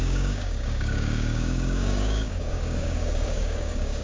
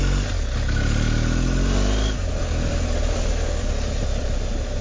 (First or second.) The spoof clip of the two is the first